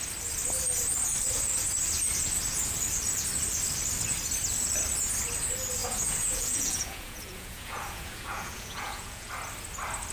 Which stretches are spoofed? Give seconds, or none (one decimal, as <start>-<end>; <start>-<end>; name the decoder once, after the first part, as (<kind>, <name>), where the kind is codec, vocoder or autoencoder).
5.8-9.3 (vocoder, Vocos)